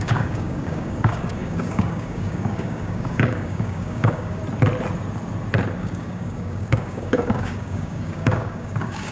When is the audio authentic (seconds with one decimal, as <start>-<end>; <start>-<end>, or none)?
4.4-5.8